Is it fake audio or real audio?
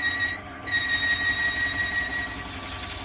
real